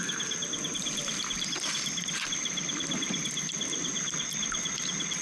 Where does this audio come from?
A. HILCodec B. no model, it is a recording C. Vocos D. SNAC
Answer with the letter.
B